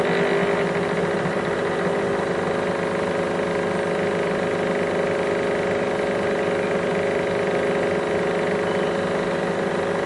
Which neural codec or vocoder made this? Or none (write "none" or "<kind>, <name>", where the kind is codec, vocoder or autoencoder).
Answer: none